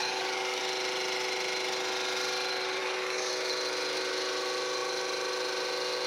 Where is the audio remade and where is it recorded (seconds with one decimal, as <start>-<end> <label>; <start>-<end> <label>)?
0.0-0.6 remade; 0.6-2.8 recorded; 2.8-3.3 remade; 3.3-6.1 recorded